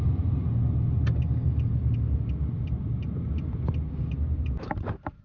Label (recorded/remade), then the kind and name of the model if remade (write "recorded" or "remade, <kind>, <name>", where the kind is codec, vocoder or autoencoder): recorded